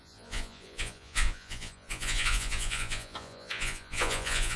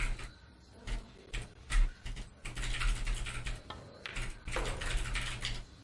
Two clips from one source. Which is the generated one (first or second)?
first